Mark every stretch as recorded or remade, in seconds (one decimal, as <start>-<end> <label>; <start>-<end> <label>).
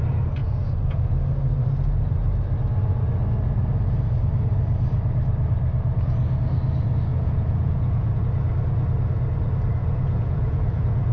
0.0-0.4 recorded; 0.4-1.1 remade; 1.1-7.1 recorded; 7.1-8.2 remade; 8.2-9.8 recorded; 9.8-11.1 remade